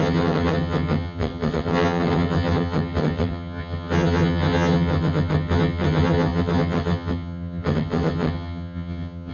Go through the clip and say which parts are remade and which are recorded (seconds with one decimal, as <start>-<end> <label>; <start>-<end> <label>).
0.0-9.3 remade